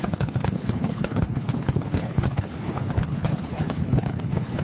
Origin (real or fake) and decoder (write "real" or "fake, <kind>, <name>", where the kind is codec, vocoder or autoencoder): fake, codec, HILCodec